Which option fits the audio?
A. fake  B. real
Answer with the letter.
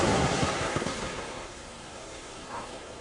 A